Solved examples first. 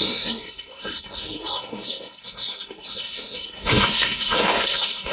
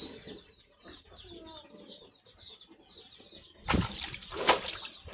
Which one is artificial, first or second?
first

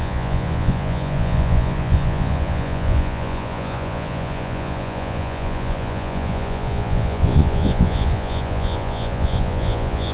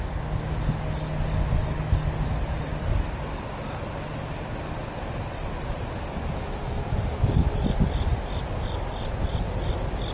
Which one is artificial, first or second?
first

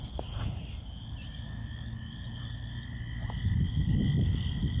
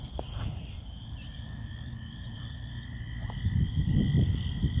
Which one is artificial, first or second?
second